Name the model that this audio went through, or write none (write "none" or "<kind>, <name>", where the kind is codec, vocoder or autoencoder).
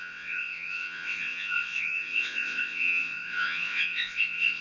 vocoder, WaveNeXt